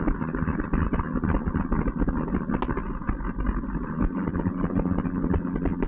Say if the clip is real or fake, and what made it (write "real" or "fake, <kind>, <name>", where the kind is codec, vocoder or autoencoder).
real